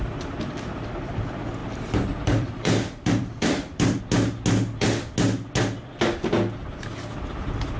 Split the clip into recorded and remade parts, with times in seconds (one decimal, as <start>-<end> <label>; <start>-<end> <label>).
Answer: 0.0-1.6 recorded; 1.6-4.0 remade; 4.0-7.8 recorded